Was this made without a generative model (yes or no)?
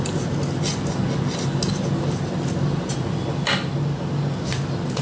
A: yes